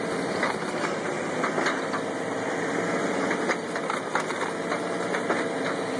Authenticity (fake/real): real